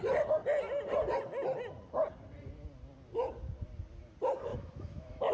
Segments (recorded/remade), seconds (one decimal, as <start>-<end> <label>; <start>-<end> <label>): 0.0-4.5 recorded; 4.5-5.3 remade